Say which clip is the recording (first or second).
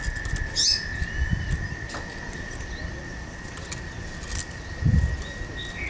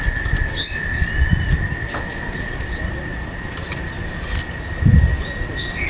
first